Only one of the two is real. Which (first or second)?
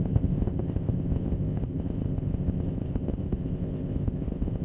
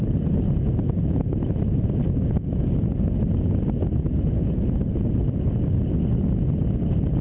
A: second